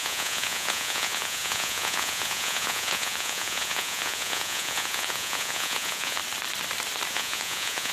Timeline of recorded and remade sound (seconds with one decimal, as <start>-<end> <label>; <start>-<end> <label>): 0.0-6.2 remade; 6.2-7.1 recorded; 7.1-7.9 remade